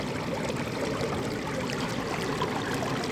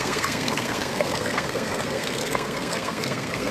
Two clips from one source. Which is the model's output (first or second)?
second